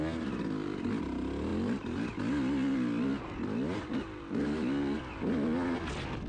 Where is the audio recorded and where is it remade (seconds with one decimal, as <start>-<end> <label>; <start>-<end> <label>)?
0.0-6.3 recorded